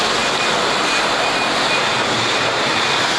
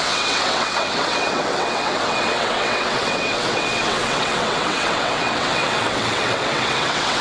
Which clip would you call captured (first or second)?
first